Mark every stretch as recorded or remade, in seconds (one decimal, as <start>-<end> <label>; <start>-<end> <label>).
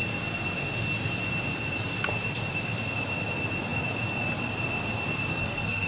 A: 0.0-5.3 recorded; 5.3-5.9 remade